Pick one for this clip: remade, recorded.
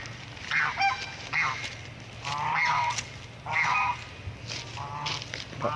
recorded